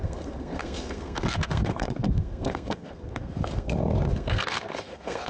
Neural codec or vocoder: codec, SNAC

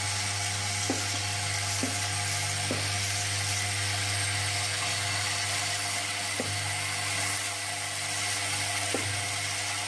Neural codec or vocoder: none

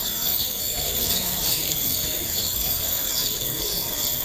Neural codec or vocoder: codec, SNAC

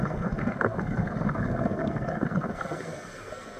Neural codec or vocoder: codec, SNAC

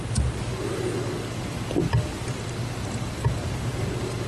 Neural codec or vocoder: none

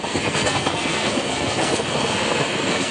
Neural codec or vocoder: codec, SNAC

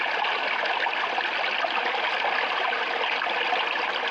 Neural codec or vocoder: none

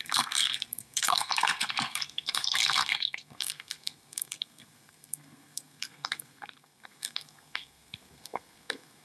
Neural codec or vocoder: codec, SNAC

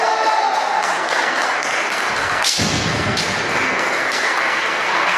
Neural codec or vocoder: codec, SNAC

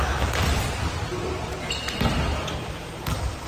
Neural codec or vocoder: none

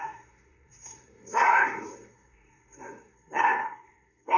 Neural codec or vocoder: codec, SNAC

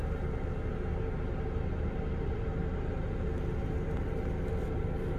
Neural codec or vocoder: none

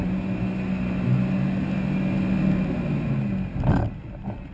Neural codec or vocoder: none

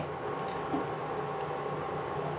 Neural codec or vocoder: none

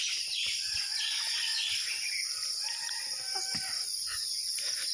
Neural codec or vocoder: none